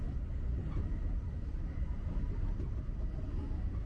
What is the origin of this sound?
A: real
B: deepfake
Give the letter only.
A